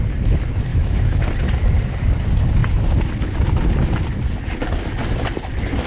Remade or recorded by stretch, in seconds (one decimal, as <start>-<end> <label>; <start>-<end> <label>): 0.0-0.7 recorded; 0.7-1.2 remade; 1.2-5.9 recorded